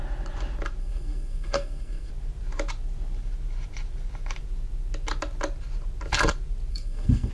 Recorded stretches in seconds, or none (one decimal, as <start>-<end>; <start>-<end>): 0.0-0.8; 2.1-6.7

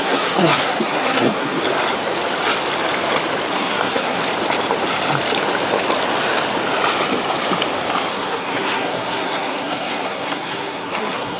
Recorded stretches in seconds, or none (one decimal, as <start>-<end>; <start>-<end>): 1.6-3.5; 4.2-8.1

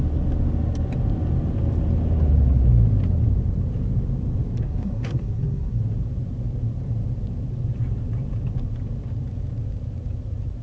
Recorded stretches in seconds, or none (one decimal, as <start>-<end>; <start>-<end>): 0.0-4.6; 5.8-10.6

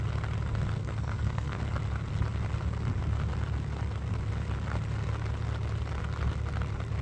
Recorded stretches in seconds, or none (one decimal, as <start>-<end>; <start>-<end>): 0.0-0.8; 1.6-7.0